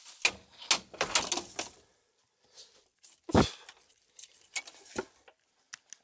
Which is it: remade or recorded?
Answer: recorded